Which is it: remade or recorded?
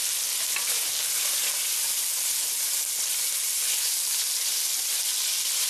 recorded